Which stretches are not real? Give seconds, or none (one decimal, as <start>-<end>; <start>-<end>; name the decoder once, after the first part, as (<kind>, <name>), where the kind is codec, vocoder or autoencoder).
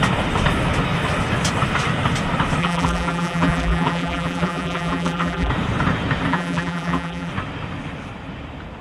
2.6-5.5 (vocoder, BigVGAN v2); 6.3-7.3